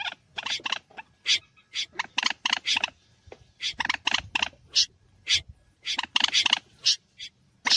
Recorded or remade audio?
recorded